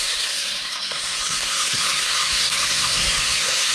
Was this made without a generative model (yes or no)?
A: no